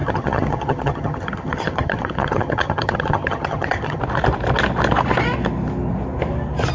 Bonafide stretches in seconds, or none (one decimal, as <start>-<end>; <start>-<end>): 4.0-6.7

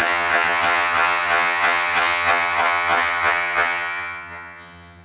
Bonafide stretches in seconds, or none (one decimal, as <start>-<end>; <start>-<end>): none

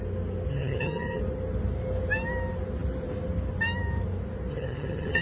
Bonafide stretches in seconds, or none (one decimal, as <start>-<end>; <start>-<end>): 0.0-0.5; 1.2-4.5

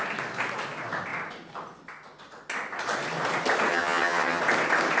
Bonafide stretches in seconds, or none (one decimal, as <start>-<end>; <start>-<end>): 0.0-3.7; 4.4-5.0

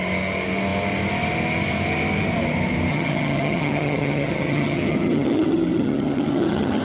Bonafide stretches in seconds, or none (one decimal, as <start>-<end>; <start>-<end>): 0.0-2.9

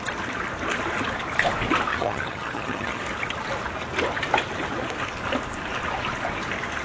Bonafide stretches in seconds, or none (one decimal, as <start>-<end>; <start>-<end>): 0.0-1.9; 3.0-6.8

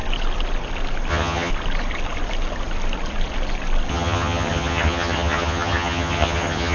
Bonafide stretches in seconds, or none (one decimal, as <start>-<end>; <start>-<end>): 0.0-1.1; 1.5-3.9